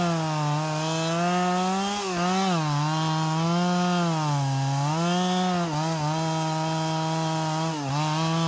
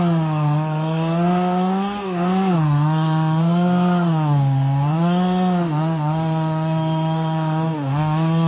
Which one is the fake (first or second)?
second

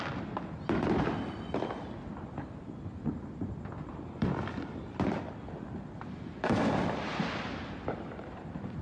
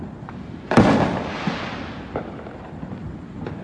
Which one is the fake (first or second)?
first